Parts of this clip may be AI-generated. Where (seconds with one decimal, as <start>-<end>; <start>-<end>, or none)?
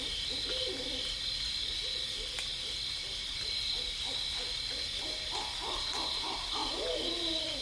none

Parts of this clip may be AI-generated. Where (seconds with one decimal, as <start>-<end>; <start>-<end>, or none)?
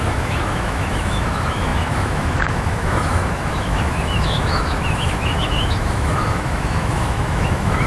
0.0-7.9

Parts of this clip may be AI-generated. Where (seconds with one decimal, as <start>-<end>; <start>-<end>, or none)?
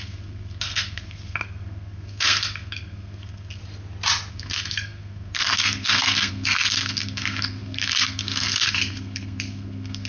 0.0-3.6; 4.3-10.1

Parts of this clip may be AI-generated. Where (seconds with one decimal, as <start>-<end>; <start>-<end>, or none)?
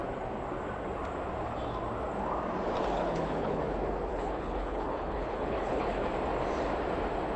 3.0-3.6; 4.1-6.1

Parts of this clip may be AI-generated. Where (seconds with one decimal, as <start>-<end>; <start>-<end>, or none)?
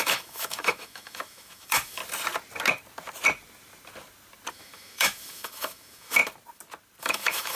0.0-2.0; 4.5-6.2; 7.0-7.6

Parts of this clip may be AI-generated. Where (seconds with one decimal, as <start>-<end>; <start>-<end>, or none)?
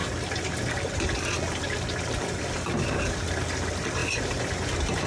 none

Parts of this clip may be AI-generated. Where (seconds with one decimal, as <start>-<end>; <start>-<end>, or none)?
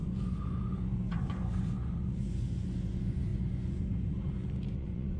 0.0-5.2